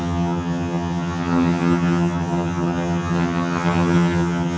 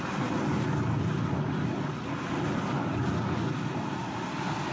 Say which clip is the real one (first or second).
second